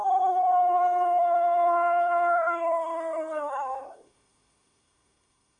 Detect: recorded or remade remade